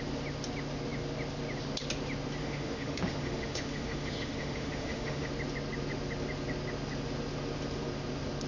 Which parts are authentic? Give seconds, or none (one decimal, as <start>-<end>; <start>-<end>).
0.0-2.4; 5.3-8.5